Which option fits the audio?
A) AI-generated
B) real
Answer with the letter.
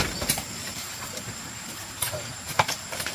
A